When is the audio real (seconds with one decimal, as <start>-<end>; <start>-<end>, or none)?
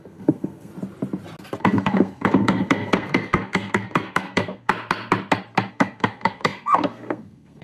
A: 0.7-1.6; 4.7-5.7